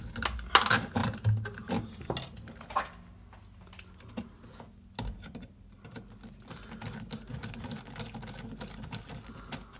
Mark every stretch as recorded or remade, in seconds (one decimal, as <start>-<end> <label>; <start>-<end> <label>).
0.0-9.8 recorded